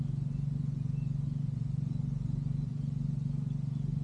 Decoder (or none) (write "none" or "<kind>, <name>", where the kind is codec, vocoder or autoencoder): none